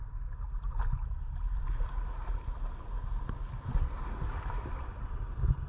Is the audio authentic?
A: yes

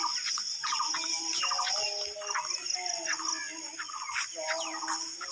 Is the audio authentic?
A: yes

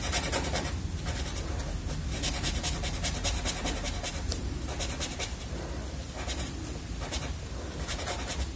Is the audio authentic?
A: yes